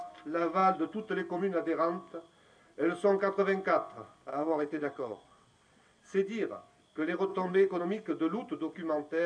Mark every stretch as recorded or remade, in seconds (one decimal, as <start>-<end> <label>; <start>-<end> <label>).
0.0-4.3 recorded; 4.3-6.0 remade; 6.0-7.3 recorded; 7.3-7.8 remade; 7.8-9.3 recorded